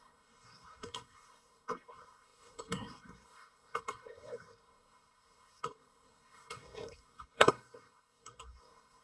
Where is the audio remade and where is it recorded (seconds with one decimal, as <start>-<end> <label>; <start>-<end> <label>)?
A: 0.0-9.0 remade